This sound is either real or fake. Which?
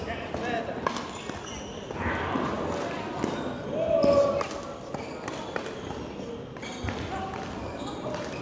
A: real